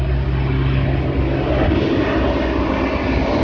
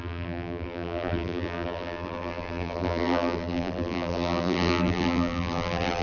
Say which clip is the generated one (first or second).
second